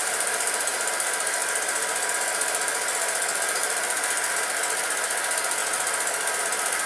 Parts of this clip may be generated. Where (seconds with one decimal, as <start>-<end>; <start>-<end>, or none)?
0.0-0.9; 3.6-4.3